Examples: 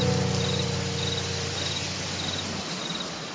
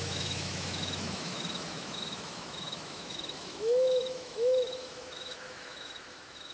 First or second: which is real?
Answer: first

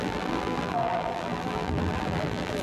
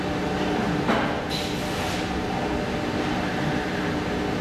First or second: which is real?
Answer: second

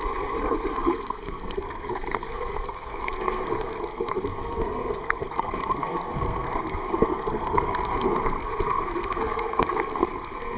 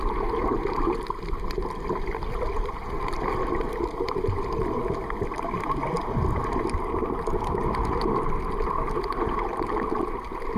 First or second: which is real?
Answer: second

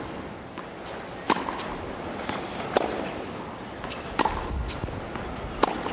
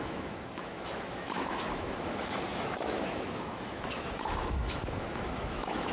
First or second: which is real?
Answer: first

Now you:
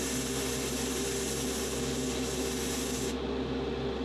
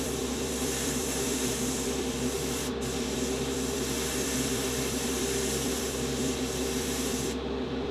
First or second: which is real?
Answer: first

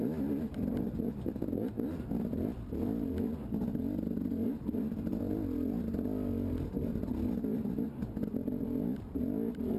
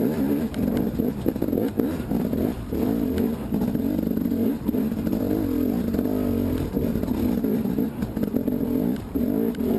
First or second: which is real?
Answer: first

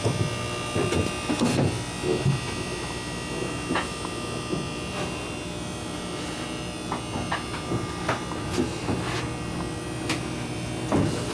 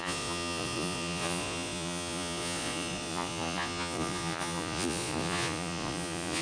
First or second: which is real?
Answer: first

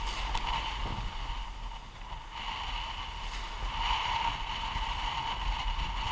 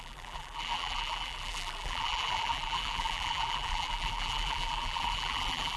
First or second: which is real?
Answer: first